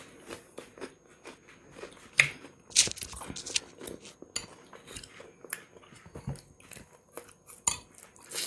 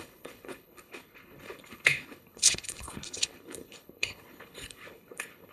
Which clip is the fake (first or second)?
second